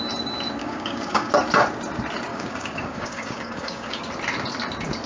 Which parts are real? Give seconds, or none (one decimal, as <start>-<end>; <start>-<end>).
0.0-0.6; 1.3-2.3; 4.0-5.1